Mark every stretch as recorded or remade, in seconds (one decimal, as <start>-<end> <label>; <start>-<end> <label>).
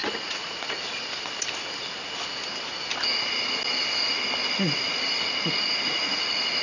0.0-0.8 remade; 0.8-6.6 recorded